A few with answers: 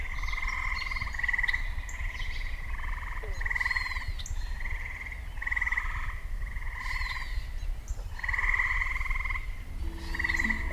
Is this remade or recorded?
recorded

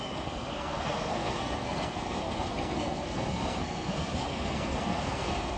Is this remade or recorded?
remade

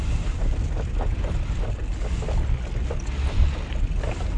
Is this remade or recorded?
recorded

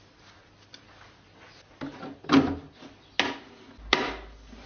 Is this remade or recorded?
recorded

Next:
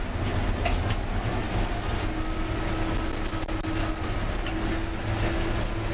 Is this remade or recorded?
recorded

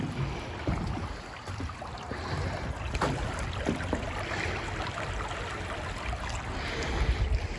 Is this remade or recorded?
recorded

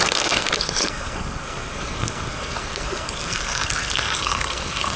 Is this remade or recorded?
remade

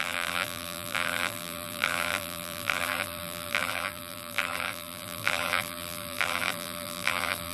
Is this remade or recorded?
remade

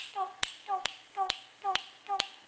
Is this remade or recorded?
remade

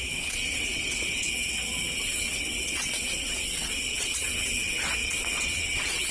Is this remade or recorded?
remade